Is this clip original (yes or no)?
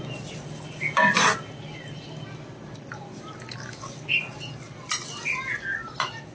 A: yes